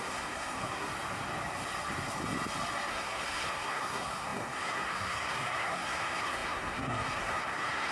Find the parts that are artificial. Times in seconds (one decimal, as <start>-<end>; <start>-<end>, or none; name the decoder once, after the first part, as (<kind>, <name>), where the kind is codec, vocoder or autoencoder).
0.0-0.9 (codec, SNAC); 2.9-7.9